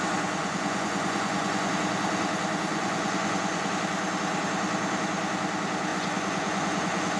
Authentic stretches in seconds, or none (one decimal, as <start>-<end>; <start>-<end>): 0.0-0.4; 1.7-2.7; 3.7-5.9